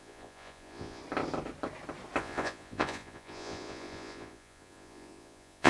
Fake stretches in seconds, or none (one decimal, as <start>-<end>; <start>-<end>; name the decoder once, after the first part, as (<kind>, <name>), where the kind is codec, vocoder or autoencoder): 0.0-1.0 (vocoder, Vocos); 2.2-5.7